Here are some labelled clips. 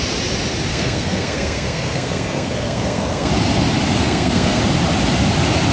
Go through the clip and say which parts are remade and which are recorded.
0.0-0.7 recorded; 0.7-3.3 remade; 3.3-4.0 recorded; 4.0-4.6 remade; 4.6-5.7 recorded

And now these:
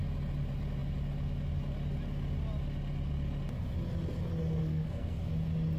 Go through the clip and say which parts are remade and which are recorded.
0.0-4.6 recorded; 4.6-5.3 remade; 5.3-5.8 recorded

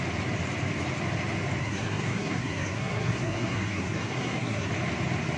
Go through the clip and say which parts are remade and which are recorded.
0.0-1.6 recorded; 1.6-4.7 remade; 4.7-5.4 recorded

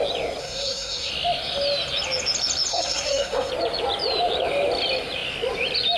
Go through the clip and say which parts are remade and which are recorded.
0.0-0.4 recorded; 0.4-1.1 remade; 1.1-2.7 recorded; 2.7-3.5 remade; 3.5-6.0 recorded

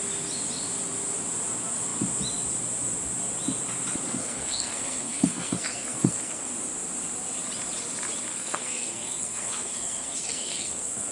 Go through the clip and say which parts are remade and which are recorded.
0.0-4.2 recorded; 4.2-6.5 remade; 6.5-8.3 recorded; 8.3-11.1 remade

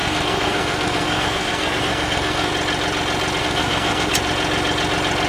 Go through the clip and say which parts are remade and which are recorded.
0.0-2.5 remade; 2.5-3.4 recorded; 3.4-4.1 remade; 4.1-5.3 recorded

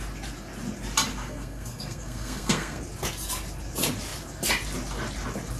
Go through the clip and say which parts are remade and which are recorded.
0.0-1.1 recorded; 1.1-2.8 remade; 2.8-5.6 recorded

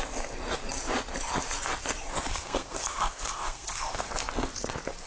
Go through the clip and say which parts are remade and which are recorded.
0.0-2.3 recorded; 2.3-4.0 remade; 4.0-5.1 recorded